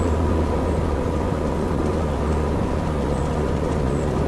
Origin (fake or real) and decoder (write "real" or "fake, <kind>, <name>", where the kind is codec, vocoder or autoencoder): fake, vocoder, Vocos